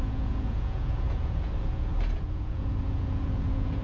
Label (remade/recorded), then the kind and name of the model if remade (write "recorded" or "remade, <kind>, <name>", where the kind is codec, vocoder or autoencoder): remade, vocoder, Vocos